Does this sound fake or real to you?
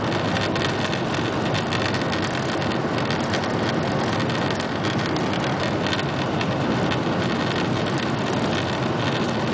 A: real